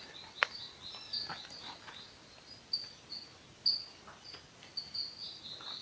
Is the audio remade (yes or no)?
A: no